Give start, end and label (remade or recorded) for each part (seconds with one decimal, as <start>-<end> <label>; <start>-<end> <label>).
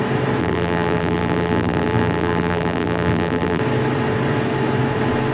0.0-0.4 recorded; 0.4-3.6 remade; 3.6-5.3 recorded